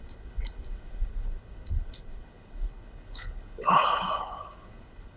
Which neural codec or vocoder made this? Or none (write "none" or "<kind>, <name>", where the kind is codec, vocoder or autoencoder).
codec, HILCodec